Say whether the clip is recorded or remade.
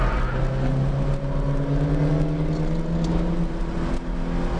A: recorded